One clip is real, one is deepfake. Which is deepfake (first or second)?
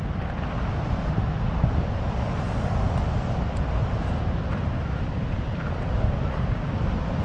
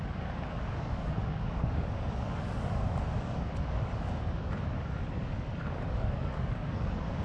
second